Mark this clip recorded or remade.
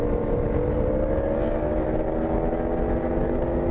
recorded